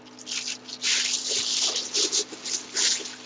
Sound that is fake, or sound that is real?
real